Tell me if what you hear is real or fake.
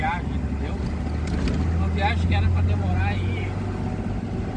real